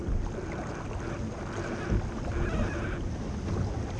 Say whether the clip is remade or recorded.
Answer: recorded